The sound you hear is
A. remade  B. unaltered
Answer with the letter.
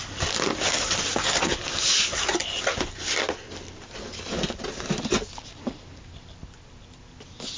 B